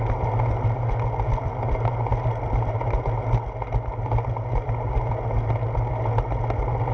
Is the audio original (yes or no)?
yes